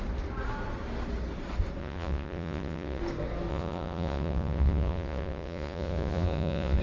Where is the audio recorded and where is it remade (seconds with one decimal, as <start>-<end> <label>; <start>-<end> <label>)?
0.0-1.8 recorded; 1.8-3.0 remade; 3.0-3.5 recorded; 3.5-6.8 remade